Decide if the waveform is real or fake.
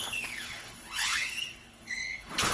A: fake